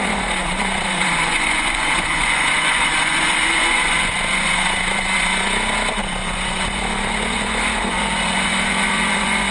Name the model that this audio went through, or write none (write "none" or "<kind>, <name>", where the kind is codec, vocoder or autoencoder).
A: vocoder, Vocos